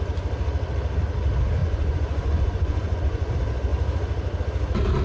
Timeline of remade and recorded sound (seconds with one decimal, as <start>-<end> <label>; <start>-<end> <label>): 0.0-1.6 recorded; 1.6-3.3 remade; 3.3-5.0 recorded